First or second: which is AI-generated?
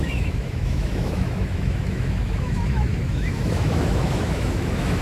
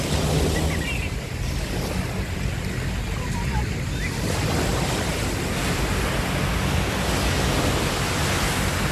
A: first